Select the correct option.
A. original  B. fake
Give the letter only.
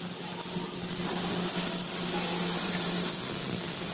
A